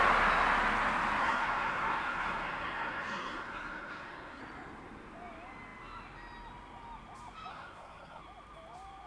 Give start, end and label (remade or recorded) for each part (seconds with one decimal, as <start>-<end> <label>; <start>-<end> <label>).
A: 0.0-1.2 recorded; 1.2-4.4 remade; 4.4-7.5 recorded; 7.5-8.2 remade; 8.2-9.1 recorded